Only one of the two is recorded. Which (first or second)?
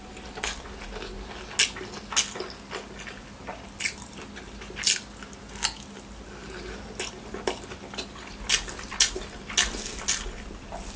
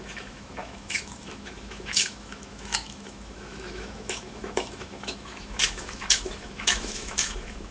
first